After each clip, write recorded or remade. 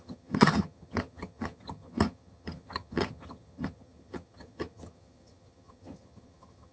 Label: remade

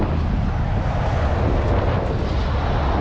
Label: recorded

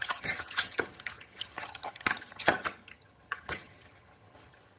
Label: remade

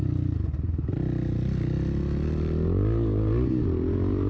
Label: recorded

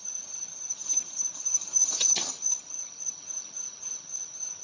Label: remade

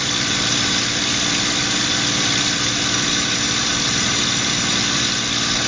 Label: recorded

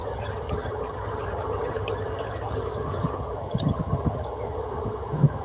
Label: remade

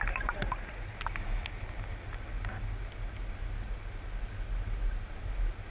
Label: recorded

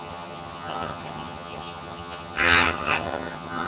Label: remade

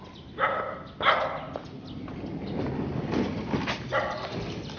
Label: recorded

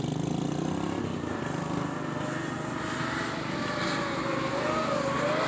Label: recorded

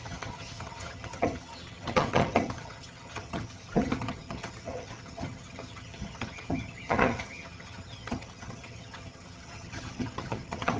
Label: remade